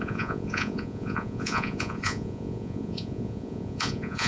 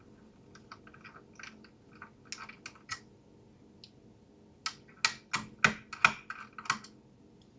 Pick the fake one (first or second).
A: first